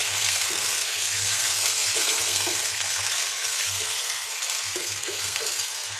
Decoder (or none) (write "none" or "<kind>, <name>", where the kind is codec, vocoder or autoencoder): codec, SNAC